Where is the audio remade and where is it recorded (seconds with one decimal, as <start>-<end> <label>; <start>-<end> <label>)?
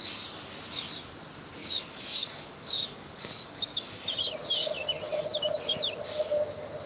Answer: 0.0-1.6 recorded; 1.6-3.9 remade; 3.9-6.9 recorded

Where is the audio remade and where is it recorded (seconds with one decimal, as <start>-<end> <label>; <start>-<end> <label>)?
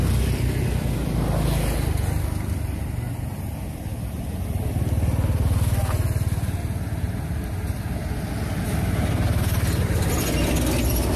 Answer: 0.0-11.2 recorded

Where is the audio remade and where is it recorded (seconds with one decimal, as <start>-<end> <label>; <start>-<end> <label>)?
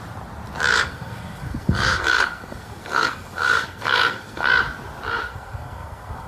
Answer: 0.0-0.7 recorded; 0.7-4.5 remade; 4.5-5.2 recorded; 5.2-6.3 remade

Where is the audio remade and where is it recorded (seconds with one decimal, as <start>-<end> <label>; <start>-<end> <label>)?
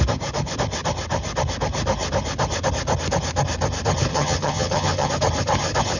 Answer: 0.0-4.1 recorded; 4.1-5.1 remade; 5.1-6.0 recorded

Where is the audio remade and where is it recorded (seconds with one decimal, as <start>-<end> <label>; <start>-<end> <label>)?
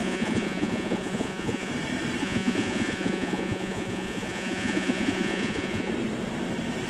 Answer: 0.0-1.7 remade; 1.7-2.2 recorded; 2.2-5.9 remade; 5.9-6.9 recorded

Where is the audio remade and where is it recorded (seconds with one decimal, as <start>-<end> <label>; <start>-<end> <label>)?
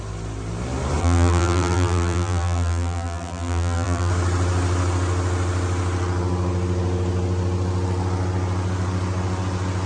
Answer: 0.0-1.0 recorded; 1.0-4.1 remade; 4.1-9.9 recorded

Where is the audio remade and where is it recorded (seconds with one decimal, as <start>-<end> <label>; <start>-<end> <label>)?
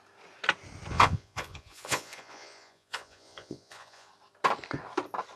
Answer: 0.0-0.9 recorded; 0.9-4.1 remade; 4.1-5.4 recorded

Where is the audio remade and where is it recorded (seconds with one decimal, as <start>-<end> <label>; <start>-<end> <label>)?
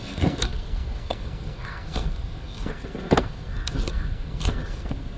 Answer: 0.0-5.2 remade